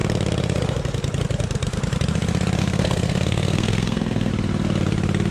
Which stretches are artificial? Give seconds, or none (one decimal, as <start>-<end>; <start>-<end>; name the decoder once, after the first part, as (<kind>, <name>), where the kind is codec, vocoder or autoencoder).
2.6-4.3 (codec, SNAC)